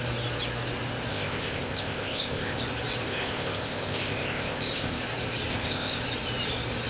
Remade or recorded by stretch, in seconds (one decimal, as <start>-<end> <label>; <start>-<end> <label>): 0.0-1.1 recorded; 1.1-2.6 remade; 2.6-3.0 recorded; 3.0-5.0 remade; 5.0-5.5 recorded; 5.5-6.0 remade; 6.0-6.9 recorded